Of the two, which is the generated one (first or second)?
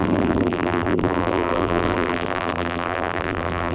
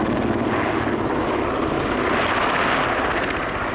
first